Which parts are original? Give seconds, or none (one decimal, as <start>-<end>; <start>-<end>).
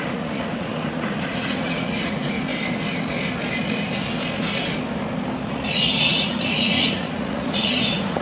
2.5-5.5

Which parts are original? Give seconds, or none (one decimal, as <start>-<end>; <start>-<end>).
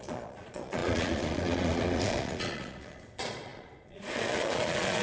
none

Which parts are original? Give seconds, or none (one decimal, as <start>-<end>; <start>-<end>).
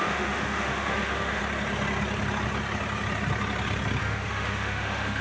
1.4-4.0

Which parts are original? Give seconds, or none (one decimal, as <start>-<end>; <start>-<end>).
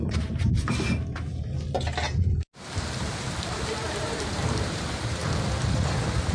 1.3-2.5; 5.2-6.3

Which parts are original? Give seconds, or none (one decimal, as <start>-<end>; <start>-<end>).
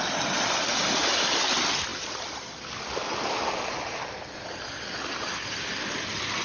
0.0-6.4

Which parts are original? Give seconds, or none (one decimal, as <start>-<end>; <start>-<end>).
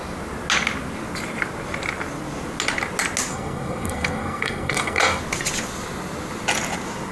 0.0-3.3; 5.2-7.1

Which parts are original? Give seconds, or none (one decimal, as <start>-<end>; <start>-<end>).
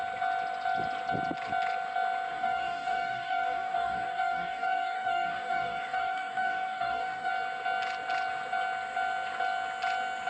0.0-2.3; 7.3-10.3